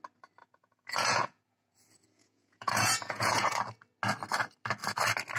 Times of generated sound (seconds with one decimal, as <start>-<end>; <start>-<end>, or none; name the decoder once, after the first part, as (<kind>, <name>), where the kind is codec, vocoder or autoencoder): 0.4-3.6 (vocoder, Vocos)